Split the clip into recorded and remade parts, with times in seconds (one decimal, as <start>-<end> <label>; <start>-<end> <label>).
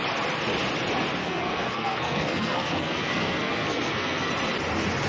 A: 0.0-1.2 recorded; 1.2-4.3 remade; 4.3-5.1 recorded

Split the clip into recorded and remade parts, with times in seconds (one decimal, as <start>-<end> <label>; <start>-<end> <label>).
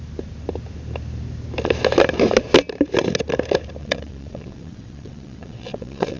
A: 0.0-3.8 recorded; 3.8-6.2 remade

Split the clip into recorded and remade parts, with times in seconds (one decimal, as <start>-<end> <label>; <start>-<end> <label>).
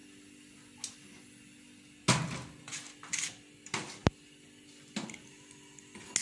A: 0.0-6.2 recorded